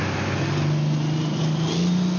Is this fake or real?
real